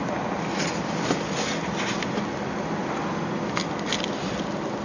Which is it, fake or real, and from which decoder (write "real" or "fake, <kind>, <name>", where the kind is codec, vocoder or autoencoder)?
real